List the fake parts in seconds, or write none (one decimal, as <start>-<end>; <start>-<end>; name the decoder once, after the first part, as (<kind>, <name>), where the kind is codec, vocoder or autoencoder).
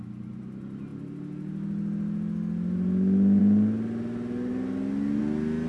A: none